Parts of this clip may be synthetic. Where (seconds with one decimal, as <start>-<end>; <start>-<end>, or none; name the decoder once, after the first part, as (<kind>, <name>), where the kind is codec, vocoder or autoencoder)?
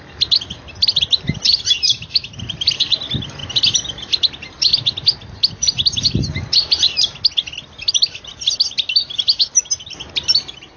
0.8-3.0 (vocoder, BigVGAN v2)